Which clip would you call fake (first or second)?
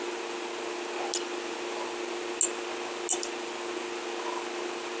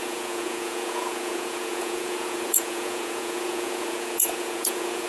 second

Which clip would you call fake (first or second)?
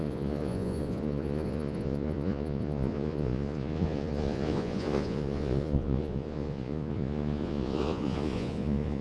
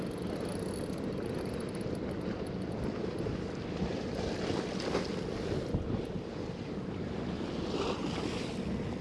first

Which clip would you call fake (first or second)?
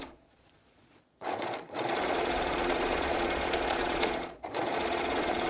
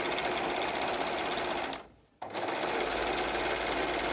first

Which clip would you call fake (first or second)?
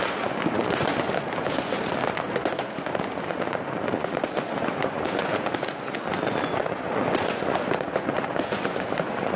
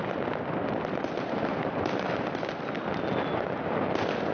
first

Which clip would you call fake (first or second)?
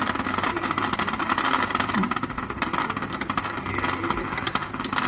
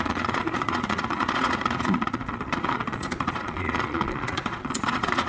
second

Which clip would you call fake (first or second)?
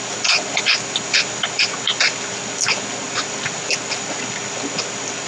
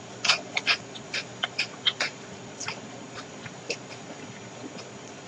second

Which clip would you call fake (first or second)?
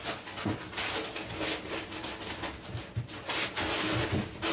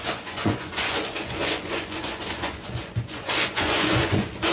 second